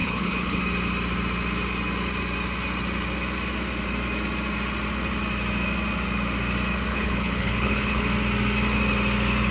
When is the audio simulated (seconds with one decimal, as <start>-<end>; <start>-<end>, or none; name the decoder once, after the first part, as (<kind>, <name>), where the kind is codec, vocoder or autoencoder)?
0.0-0.6 (codec, HILCodec); 6.9-8.1